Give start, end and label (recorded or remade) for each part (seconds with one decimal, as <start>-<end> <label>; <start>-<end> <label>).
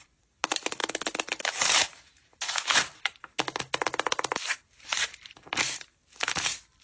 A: 0.0-6.8 recorded